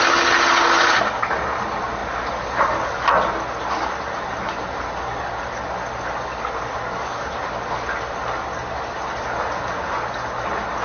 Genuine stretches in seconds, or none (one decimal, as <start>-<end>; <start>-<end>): 0.0-10.8